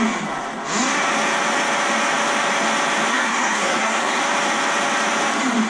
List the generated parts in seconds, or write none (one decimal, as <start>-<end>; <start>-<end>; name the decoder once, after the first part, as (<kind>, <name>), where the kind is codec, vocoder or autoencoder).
3.1-4.2 (codec, SNAC)